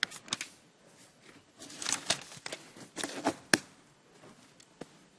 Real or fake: real